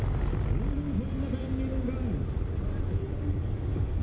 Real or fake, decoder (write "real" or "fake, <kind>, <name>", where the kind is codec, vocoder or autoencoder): real